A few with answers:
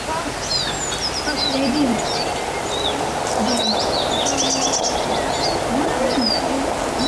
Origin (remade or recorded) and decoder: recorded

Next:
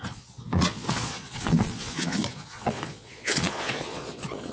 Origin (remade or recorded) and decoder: remade, vocoder, Vocos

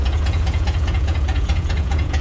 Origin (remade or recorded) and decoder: remade, vocoder, Vocos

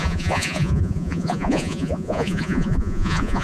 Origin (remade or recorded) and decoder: remade, vocoder, Vocos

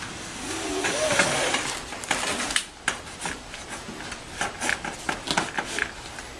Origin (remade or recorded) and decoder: recorded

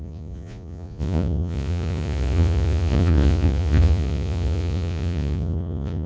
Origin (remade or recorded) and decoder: remade, vocoder, Vocos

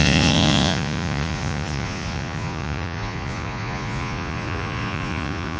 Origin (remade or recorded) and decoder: remade, vocoder, Vocos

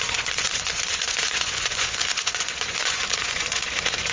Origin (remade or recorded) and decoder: remade, vocoder, Vocos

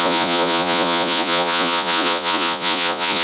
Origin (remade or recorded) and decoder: remade, vocoder, Vocos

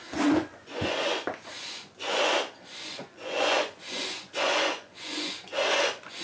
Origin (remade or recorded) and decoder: remade, vocoder, Vocos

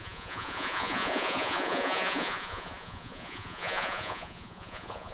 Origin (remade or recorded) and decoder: remade, vocoder, Vocos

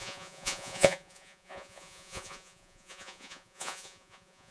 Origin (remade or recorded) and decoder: remade, vocoder, Vocos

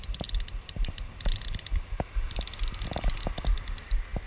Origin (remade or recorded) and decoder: recorded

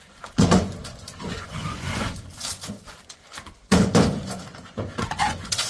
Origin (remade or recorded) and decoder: remade, vocoder, Vocos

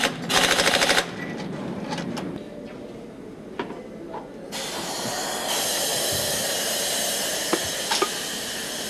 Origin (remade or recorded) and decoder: recorded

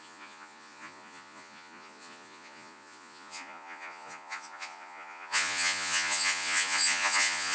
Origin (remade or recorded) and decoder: remade, vocoder, Vocos